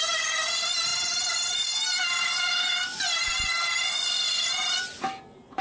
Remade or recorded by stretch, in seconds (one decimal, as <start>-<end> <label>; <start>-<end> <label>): 0.0-5.6 recorded

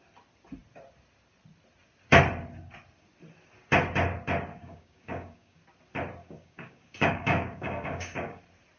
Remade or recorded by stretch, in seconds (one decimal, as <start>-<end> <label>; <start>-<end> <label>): 0.0-4.5 recorded; 4.5-5.6 remade; 5.6-6.2 recorded; 6.2-8.4 remade; 8.4-8.8 recorded

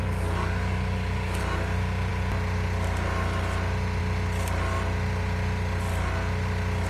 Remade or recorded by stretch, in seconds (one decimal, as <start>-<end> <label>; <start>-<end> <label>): 0.0-1.4 remade; 1.4-6.9 recorded